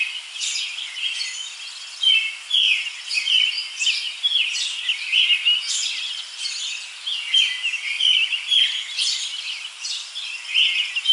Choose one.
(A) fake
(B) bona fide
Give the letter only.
B